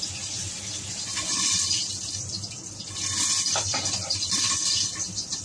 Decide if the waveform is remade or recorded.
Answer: recorded